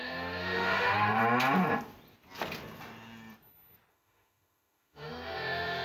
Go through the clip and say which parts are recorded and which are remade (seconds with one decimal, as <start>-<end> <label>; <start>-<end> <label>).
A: 0.0-1.2 remade; 1.2-3.9 recorded; 3.9-5.8 remade